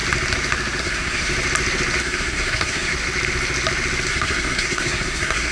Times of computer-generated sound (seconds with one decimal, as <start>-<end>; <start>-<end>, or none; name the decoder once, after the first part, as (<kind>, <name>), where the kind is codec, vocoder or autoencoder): 0.8-1.3 (codec, SNAC); 2.0-2.9; 4.1-5.5